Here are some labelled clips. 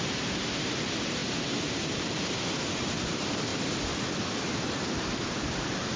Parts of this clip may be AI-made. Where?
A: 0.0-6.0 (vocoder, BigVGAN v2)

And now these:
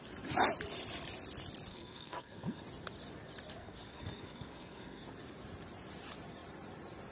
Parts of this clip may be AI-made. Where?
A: 1.7-2.6 (codec, SNAC); 3.6-5.0

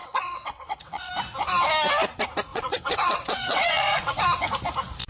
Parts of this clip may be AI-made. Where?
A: 0.0-1.1 (vocoder, WaveNeXt); 2.5-4.2

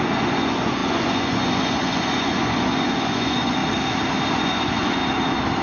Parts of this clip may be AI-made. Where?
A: 0.0-3.6 (vocoder, Vocos); 4.3-5.0